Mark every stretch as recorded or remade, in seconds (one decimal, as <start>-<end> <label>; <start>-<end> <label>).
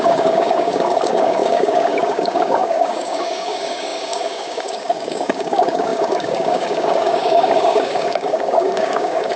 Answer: 0.0-9.4 remade